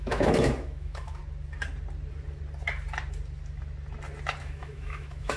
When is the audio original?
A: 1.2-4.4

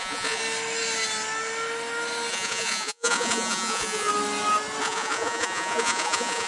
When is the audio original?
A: 0.4-2.3; 4.1-4.8

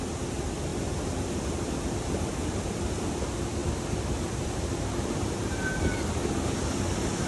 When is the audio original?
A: 0.0-3.6; 5.8-7.3

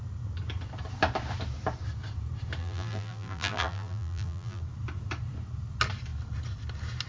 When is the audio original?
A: 0.0-2.6; 4.6-7.1

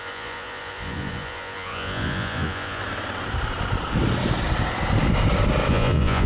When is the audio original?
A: 2.8-5.7

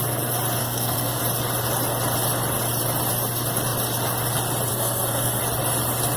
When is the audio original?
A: 0.0-0.6; 1.2-4.7; 5.4-6.2

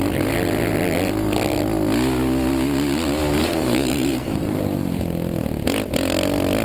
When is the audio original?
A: 0.0-3.4; 4.6-6.6